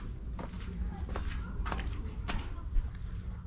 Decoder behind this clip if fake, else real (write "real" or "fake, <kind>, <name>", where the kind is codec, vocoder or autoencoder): real